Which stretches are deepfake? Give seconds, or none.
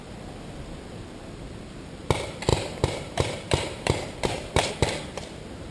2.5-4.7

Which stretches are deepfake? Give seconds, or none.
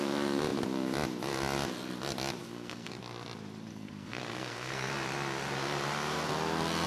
2.4-3.0; 3.7-4.9